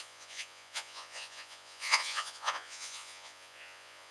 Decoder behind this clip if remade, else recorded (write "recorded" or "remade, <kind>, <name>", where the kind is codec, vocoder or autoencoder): remade, vocoder, Vocos